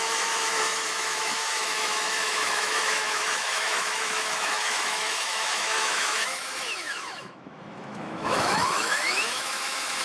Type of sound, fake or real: fake